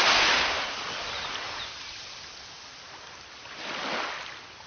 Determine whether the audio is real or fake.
real